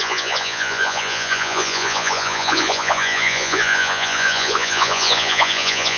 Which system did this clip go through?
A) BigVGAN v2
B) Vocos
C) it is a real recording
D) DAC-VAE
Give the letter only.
B